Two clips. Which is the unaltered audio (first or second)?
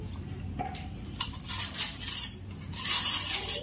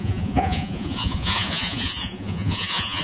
first